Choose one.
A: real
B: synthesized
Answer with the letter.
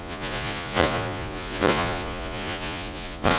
B